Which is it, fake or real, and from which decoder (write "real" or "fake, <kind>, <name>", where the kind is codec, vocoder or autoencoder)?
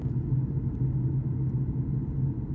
real